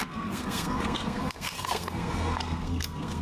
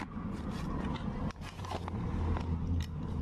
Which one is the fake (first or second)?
first